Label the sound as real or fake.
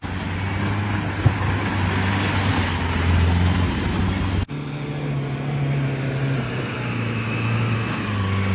real